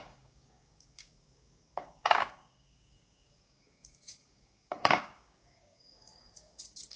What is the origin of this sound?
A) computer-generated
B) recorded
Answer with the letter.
A